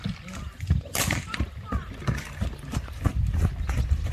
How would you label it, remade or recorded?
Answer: recorded